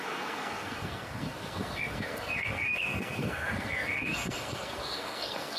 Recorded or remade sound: remade